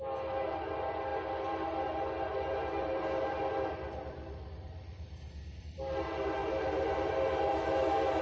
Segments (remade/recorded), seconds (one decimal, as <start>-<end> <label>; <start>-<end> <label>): 0.0-8.2 remade